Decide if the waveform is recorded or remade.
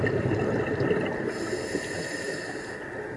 recorded